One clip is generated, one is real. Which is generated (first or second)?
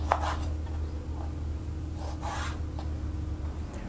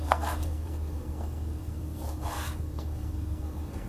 second